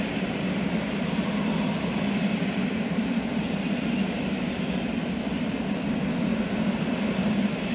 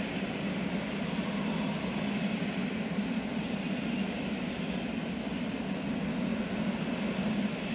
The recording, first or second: second